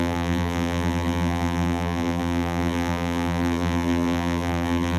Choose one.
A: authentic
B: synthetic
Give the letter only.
B